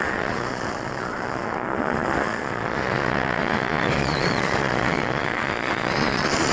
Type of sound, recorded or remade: remade